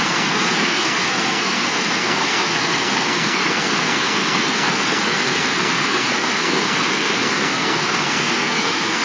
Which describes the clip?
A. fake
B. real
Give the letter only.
A